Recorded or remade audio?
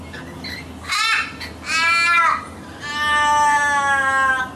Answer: recorded